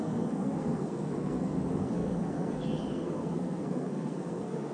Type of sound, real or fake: fake